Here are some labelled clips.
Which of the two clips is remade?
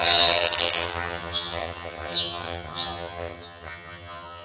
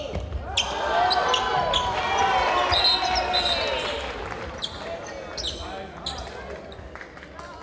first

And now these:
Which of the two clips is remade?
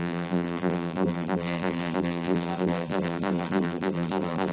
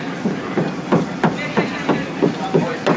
first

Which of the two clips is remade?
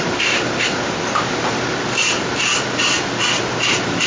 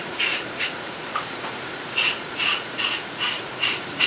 second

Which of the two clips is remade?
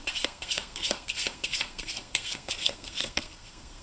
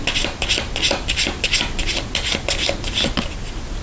first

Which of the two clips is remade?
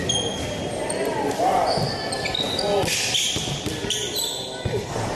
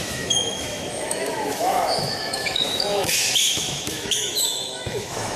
second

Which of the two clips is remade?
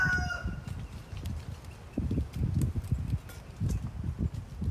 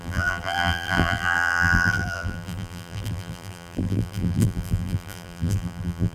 second